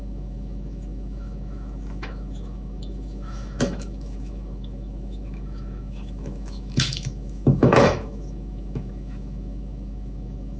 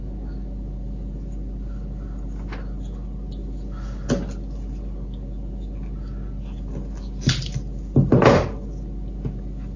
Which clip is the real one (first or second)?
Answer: second